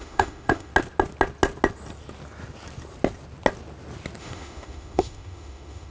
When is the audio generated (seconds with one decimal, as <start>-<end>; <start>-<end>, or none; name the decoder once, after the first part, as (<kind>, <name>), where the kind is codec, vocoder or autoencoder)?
0.0-0.7 (autoencoder, DAC-VAE); 4.2-5.9